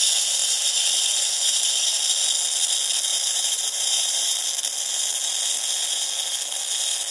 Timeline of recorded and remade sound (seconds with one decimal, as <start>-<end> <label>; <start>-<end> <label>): 0.0-0.4 recorded; 0.4-2.0 remade; 2.0-3.1 recorded; 3.1-4.3 remade; 4.3-7.1 recorded

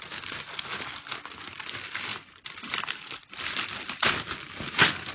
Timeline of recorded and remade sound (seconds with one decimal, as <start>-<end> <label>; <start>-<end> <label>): 0.0-5.1 recorded

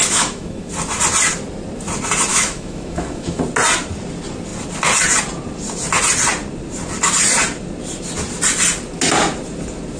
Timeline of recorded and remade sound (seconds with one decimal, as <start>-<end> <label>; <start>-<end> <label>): 0.0-0.7 remade; 0.7-2.3 recorded; 2.3-3.4 remade; 3.4-10.0 recorded

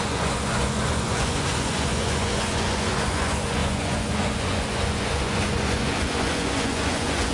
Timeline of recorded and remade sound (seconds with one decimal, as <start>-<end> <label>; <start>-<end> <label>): 0.0-7.3 remade

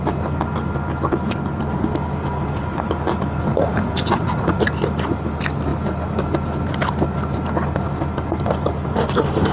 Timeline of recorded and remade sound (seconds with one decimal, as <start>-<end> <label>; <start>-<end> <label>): 0.0-3.5 recorded; 3.5-4.6 remade; 4.6-9.5 recorded

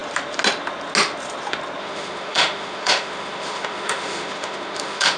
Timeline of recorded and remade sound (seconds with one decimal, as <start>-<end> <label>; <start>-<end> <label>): 0.0-1.8 recorded; 1.8-5.2 remade

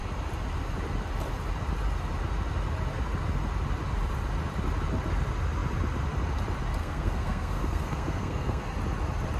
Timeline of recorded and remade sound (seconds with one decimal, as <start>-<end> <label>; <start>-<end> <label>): 0.0-6.8 recorded; 6.8-8.6 remade; 8.6-9.4 recorded